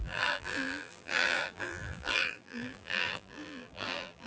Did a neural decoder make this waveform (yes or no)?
yes